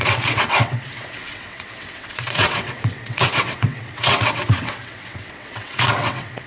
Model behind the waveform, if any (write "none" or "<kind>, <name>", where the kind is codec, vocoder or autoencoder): vocoder, WaveNeXt